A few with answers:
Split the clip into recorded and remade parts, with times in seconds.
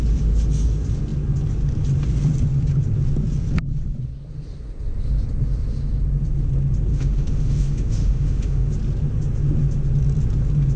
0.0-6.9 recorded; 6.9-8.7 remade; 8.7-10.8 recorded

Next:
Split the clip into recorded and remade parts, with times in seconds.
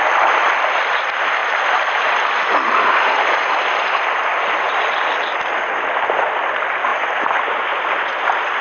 0.0-8.6 recorded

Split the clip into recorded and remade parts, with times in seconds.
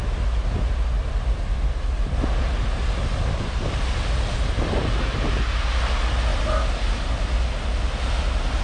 0.0-8.6 recorded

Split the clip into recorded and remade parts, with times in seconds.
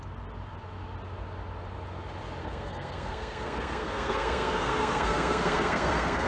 0.0-2.4 recorded; 2.4-6.3 remade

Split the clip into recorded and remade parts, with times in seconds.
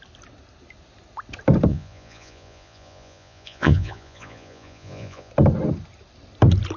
0.0-1.7 recorded; 1.7-5.3 remade; 5.3-6.8 recorded